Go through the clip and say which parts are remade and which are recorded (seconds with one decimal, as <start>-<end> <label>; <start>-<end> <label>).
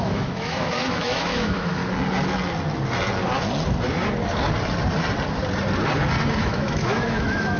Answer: 0.0-1.8 remade; 1.8-6.4 recorded; 6.4-7.6 remade